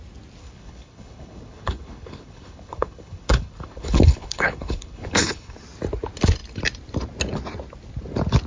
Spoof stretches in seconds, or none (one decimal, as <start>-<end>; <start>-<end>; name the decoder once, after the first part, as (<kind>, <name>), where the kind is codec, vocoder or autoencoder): 0.4-5.5 (codec, HILCodec)

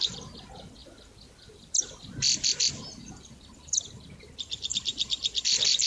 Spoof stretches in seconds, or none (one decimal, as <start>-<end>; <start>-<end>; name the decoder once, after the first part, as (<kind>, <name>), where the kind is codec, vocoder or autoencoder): none

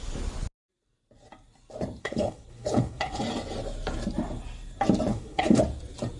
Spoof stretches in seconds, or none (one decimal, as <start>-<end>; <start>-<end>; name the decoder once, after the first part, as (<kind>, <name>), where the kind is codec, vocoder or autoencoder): 2.0-3.2 (codec, HILCodec); 5.1-5.6

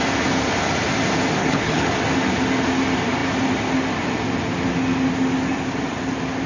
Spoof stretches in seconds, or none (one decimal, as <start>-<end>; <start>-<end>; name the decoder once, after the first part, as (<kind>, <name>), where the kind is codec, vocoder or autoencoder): 1.4-1.9 (codec, HILCodec)

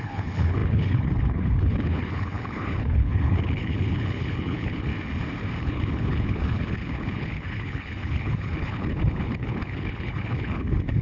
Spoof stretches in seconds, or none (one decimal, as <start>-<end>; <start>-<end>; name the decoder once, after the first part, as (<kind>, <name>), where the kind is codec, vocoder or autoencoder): 0.0-4.9 (codec, HILCodec); 5.6-11.0

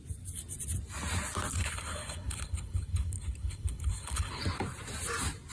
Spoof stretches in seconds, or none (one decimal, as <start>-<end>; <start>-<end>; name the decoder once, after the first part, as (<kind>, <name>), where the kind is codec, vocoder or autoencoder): 1.6-4.4 (codec, HILCodec)